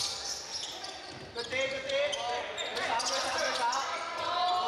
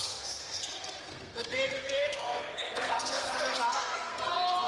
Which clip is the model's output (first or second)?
second